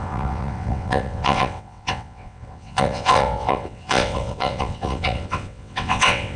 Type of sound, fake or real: fake